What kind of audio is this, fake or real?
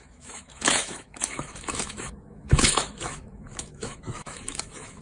fake